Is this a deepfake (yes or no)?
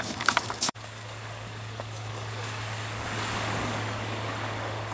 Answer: yes